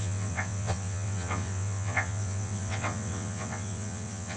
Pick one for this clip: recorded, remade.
remade